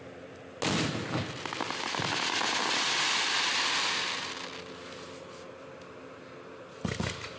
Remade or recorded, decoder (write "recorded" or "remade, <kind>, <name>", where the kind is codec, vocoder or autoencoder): recorded